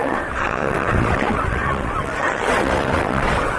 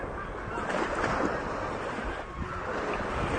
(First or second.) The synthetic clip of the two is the first